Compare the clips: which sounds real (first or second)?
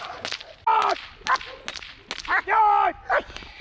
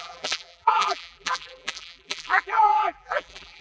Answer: first